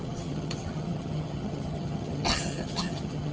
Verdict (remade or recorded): remade